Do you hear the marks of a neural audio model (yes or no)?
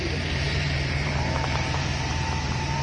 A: yes